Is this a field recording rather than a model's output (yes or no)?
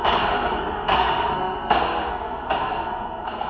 no